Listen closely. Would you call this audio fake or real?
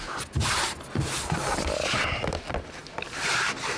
real